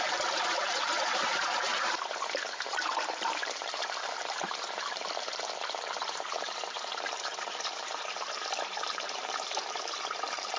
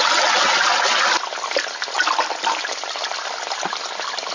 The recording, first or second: second